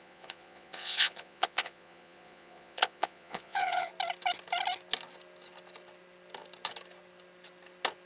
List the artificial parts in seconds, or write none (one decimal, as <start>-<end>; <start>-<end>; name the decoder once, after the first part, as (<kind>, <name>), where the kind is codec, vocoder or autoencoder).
0.0-3.9 (vocoder, Vocos)